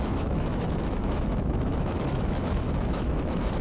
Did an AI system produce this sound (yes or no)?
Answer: yes